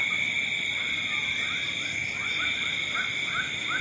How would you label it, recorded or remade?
recorded